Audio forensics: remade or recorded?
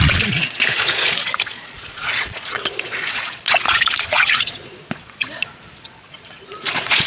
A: remade